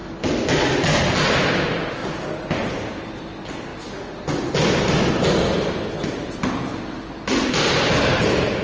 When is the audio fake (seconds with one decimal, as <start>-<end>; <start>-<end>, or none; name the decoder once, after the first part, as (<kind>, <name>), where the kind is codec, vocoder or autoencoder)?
none